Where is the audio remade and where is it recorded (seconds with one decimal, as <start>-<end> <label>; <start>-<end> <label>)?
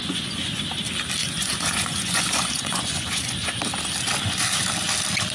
0.0-0.6 remade; 0.6-1.2 recorded; 1.2-3.5 remade; 3.5-5.3 recorded